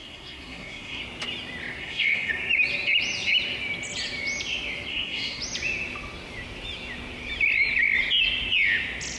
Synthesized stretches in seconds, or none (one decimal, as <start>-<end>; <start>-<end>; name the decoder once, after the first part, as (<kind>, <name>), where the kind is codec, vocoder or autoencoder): 0.0-1.0 (codec, SNAC); 1.8-2.3; 4.9-5.4